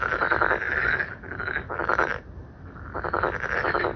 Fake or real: real